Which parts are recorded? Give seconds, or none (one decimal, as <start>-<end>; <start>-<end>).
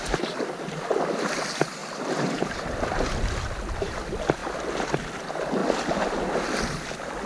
0.0-1.8; 3.3-4.4; 5.0-7.3